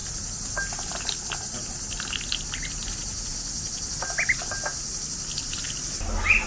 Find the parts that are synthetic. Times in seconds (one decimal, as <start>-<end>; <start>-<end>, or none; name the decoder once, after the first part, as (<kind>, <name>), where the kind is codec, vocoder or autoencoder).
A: none